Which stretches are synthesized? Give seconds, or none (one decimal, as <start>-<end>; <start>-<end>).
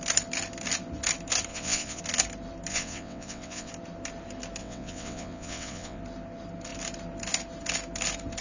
1.5-2.0; 2.7-3.7; 4.6-6.0